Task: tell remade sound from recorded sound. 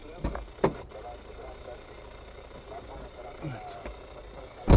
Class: recorded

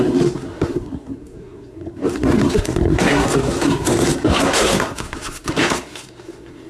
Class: remade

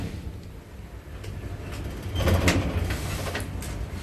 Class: recorded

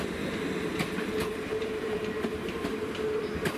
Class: remade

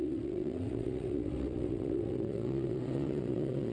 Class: remade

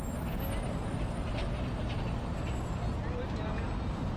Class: recorded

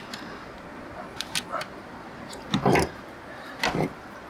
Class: recorded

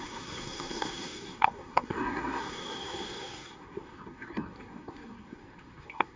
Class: remade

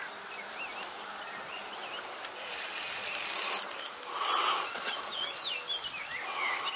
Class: recorded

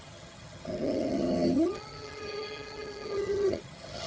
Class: remade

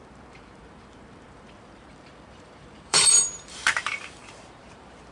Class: remade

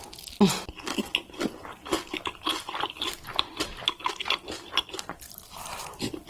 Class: recorded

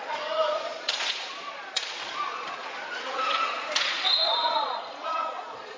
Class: remade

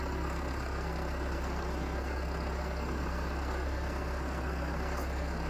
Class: remade